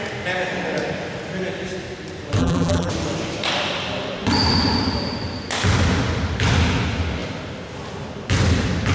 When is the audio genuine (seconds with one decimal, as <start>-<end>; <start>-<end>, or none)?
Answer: 0.0-2.4; 2.9-8.9